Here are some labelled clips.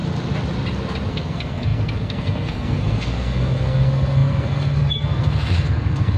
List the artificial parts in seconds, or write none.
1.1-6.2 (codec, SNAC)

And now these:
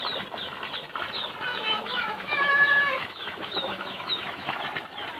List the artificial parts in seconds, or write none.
1.5-4.6 (autoencoder, DAC-VAE)